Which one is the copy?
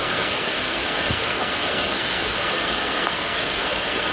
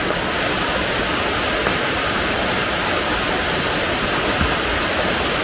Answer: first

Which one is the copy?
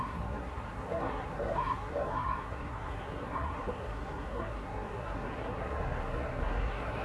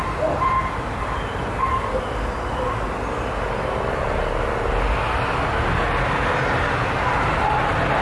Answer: first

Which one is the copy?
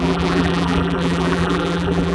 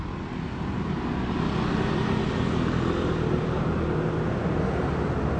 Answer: first